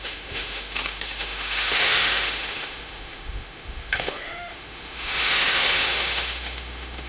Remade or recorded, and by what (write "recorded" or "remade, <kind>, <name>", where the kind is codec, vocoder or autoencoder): remade, autoencoder, DAC-VAE